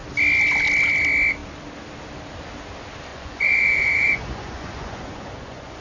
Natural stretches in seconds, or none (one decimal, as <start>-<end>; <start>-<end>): 0.0-3.1